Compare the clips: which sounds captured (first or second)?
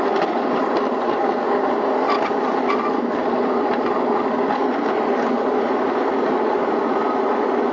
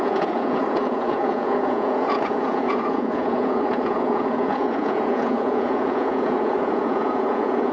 first